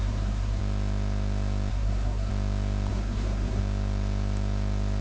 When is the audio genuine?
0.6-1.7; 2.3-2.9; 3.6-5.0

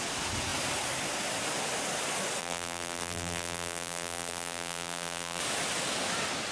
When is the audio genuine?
0.0-2.4; 5.4-6.5

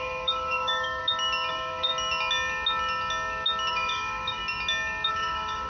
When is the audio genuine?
1.0-1.5; 1.9-3.7; 4.4-5.1

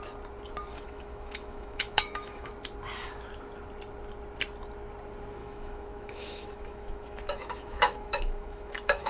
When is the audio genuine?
0.0-0.7; 2.5-5.4

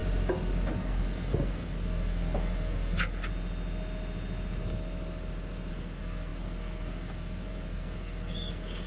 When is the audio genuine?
0.0-0.8; 3.3-5.7

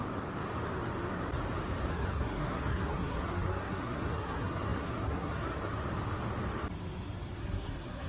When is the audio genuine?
0.0-1.9; 5.7-7.4